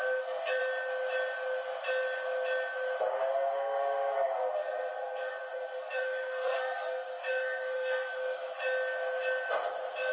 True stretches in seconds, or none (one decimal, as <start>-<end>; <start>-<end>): 0.6-3.3; 8.6-10.1